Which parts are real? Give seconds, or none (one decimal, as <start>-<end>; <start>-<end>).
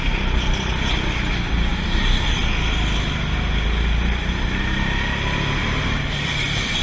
0.0-6.8